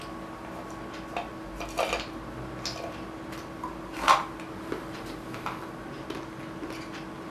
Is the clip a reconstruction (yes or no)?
no